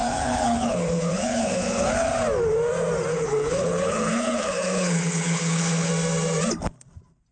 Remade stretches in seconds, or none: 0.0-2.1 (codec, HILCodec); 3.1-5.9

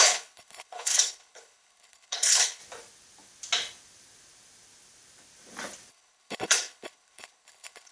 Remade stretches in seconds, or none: 0.0-2.6 (codec, HILCodec); 5.9-7.9